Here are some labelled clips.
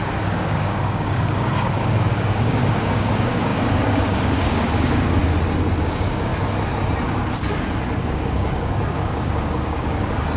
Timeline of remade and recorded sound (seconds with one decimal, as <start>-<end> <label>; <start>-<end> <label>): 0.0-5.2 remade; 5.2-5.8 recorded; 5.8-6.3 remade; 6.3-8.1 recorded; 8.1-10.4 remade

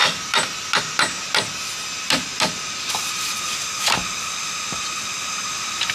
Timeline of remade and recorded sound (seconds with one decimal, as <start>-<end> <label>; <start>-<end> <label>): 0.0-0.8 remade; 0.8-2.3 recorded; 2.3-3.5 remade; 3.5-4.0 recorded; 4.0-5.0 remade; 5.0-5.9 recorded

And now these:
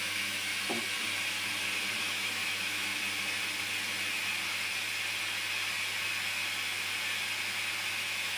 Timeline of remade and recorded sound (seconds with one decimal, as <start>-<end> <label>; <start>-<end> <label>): 0.0-0.5 remade; 0.5-2.0 recorded; 2.0-2.9 remade; 2.9-7.9 recorded; 7.9-8.4 remade

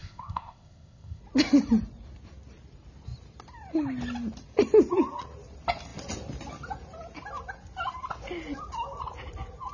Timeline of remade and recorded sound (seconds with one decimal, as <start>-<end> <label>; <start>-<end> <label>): 0.0-1.2 remade; 1.2-9.7 recorded